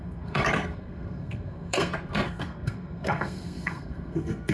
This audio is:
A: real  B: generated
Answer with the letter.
B